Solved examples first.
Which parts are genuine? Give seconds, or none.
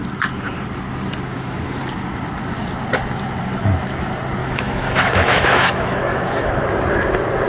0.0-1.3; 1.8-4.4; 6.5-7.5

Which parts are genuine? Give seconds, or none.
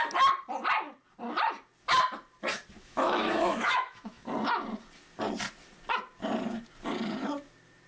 0.0-2.8; 4.3-7.9